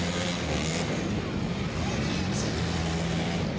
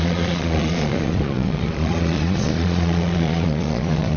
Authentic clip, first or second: first